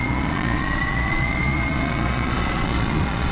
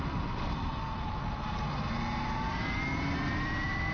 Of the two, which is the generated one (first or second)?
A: first